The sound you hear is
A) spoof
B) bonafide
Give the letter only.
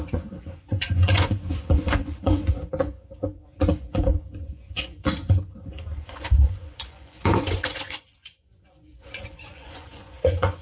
A